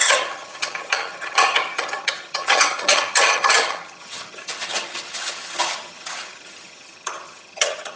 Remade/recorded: remade